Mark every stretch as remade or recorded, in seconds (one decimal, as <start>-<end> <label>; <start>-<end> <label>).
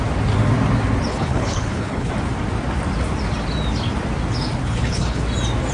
0.0-1.1 recorded; 1.1-2.1 remade; 2.1-4.6 recorded; 4.6-5.2 remade; 5.2-5.7 recorded